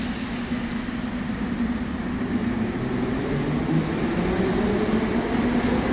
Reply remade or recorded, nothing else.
recorded